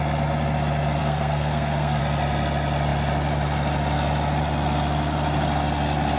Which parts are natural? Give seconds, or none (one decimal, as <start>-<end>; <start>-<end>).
0.0-1.0; 2.0-6.2